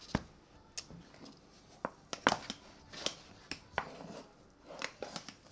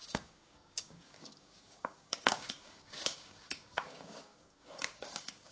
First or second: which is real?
first